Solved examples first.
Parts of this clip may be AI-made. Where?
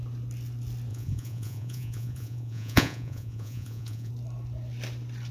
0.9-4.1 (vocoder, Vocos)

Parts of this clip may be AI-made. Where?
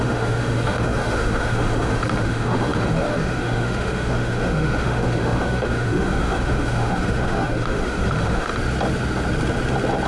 0.0-8.5 (autoencoder, DAC-VAE)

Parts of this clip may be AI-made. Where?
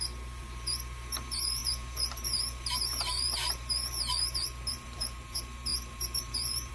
0.0-6.7 (vocoder, BigVGAN v2)